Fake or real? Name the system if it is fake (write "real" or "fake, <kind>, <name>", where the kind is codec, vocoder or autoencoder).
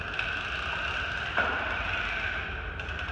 real